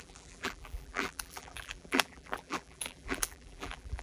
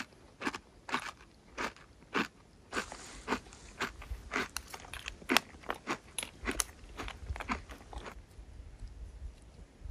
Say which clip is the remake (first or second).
first